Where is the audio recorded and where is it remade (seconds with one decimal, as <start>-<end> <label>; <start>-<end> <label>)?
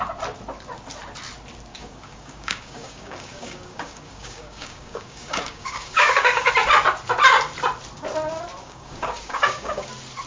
0.0-1.7 recorded; 1.7-6.5 remade; 6.5-8.6 recorded; 8.6-9.9 remade; 9.9-10.3 recorded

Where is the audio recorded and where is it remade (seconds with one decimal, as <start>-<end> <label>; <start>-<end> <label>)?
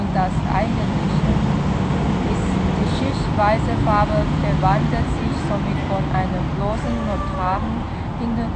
0.0-8.6 recorded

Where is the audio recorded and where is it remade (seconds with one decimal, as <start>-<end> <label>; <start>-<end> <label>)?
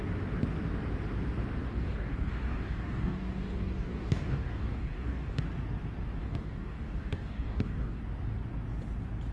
0.0-1.7 recorded; 1.7-5.4 remade; 5.4-6.2 recorded; 6.2-8.0 remade; 8.0-9.3 recorded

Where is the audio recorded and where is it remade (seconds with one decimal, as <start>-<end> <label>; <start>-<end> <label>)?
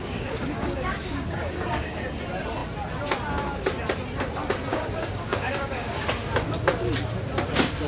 0.0-2.0 remade; 2.0-4.7 recorded; 4.7-6.1 remade; 6.1-7.9 recorded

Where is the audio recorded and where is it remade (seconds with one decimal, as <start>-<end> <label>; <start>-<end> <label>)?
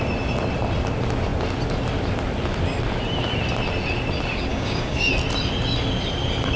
0.0-4.5 recorded; 4.5-5.1 remade; 5.1-6.6 recorded